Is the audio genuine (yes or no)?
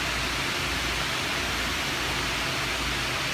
yes